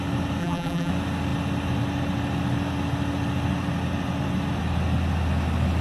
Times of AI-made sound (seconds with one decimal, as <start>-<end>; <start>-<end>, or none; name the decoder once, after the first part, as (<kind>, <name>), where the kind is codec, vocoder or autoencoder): 0.4-0.9 (vocoder, BigVGAN v2)